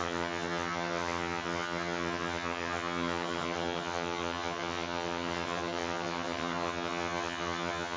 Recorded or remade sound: remade